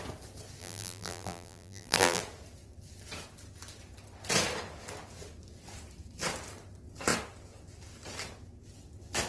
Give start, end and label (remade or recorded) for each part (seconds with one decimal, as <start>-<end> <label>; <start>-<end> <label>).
0.0-0.6 recorded; 0.6-2.2 remade; 2.2-9.3 recorded